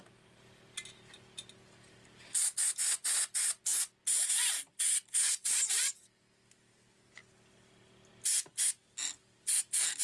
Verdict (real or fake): real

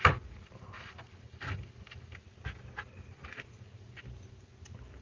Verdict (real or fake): real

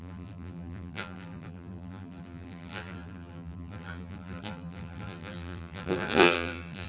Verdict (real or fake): fake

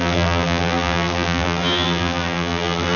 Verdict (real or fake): fake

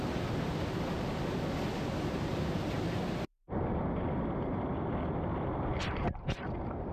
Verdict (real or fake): real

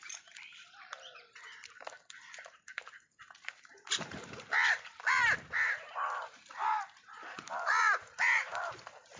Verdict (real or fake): fake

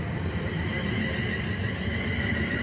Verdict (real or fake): fake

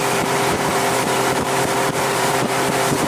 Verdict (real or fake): fake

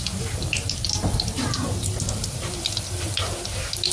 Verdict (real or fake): fake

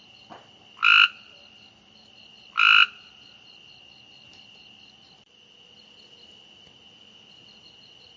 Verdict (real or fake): real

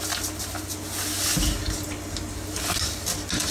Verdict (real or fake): real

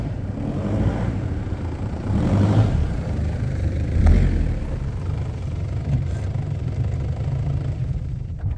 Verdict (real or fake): fake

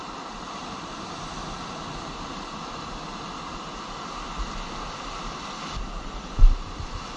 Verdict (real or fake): fake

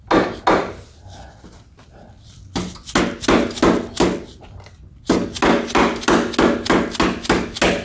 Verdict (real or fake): real